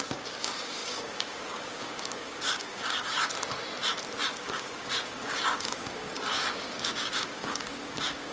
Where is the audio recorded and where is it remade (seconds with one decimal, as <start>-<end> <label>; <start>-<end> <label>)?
0.0-3.3 remade; 3.3-4.3 recorded; 4.3-8.3 remade